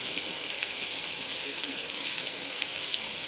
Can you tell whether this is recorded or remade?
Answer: remade